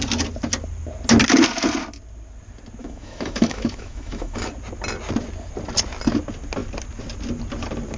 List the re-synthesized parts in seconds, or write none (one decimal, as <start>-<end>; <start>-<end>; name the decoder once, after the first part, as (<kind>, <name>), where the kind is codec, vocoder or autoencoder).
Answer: 2.8-4.5 (autoencoder, DAC-VAE)